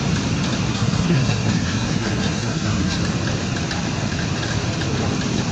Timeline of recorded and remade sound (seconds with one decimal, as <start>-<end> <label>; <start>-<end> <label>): 0.0-0.7 recorded; 0.7-3.0 remade; 3.0-5.5 recorded